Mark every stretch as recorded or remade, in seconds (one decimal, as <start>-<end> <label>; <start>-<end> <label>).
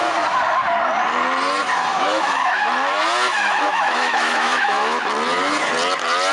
0.0-1.9 recorded; 1.9-2.6 remade; 2.6-3.3 recorded; 3.3-5.0 remade; 5.0-6.3 recorded